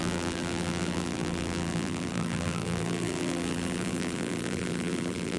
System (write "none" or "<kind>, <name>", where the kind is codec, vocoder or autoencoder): vocoder, BigVGAN v2